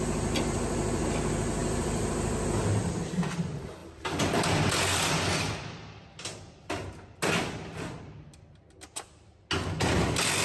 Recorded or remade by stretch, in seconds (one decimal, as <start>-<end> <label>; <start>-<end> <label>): 0.0-1.6 recorded; 1.6-2.1 remade; 2.1-3.8 recorded; 3.8-5.1 remade; 5.1-10.4 recorded